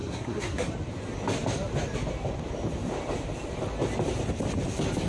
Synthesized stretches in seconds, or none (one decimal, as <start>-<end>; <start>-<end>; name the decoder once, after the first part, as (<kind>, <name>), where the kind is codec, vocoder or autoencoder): 0.0-0.7 (codec, SNAC)